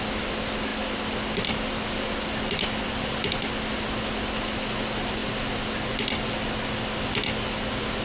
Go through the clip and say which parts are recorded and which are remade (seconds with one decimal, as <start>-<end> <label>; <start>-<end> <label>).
0.0-8.0 recorded